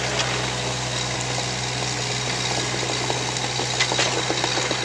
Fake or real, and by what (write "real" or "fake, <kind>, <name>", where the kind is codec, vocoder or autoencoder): real